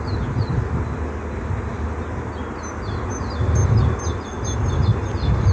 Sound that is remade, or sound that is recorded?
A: recorded